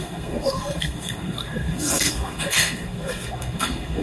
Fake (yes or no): yes